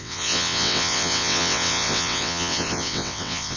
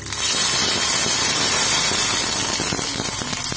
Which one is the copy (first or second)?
first